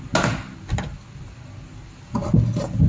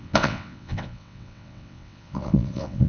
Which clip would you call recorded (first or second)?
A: first